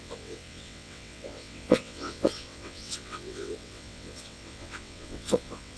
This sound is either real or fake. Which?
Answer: fake